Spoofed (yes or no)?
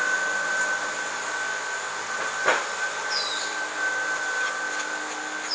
no